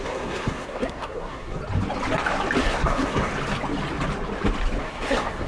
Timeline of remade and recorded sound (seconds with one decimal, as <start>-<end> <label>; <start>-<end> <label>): 0.0-1.6 remade; 1.6-2.6 recorded; 2.6-3.3 remade; 3.3-4.8 recorded; 4.8-5.5 remade